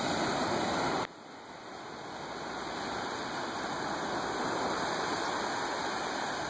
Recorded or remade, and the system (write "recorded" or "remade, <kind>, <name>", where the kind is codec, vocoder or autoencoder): recorded